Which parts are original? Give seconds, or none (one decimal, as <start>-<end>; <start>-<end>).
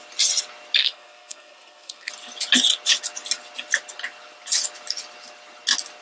0.0-0.8; 2.1-6.0